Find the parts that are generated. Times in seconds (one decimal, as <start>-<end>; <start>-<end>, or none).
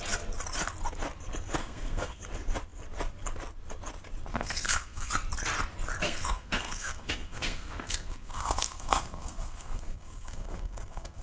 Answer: 1.6-2.2; 4.3-5.1; 6.0-11.2